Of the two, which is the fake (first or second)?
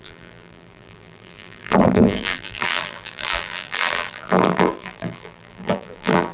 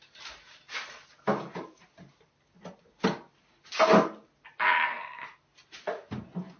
first